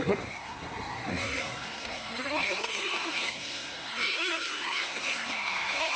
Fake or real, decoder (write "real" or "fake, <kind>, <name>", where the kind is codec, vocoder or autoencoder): fake, codec, SNAC